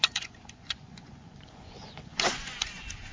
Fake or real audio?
fake